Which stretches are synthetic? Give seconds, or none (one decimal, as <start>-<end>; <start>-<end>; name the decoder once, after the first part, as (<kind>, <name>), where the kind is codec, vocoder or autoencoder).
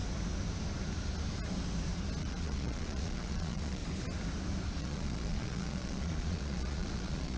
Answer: 2.2-3.8 (vocoder, Vocos); 4.8-7.4